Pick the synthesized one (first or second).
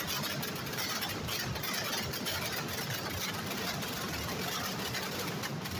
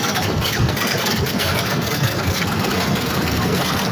second